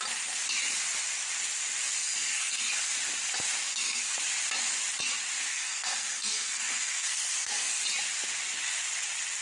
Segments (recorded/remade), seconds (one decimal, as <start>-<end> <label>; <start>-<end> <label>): 0.0-2.0 recorded; 2.0-2.7 remade; 2.7-3.7 recorded; 3.7-4.2 remade; 4.2-5.5 recorded; 5.5-7.8 remade; 7.8-9.4 recorded